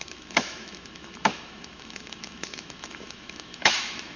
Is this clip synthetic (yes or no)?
yes